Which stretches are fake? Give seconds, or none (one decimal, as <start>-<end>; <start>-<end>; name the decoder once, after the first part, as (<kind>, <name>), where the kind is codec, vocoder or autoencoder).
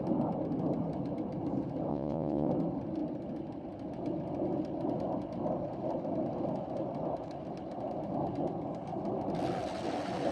1.9-2.5 (vocoder, Vocos)